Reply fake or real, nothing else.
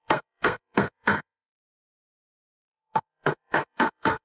fake